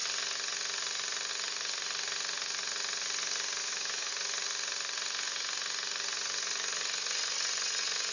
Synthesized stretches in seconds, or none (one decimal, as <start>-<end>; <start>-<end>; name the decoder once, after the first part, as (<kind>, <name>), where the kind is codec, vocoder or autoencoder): 3.6-4.1 (autoencoder, DAC-VAE)